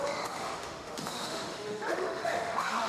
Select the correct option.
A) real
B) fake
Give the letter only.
B